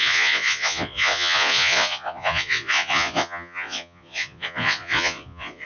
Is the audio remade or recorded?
remade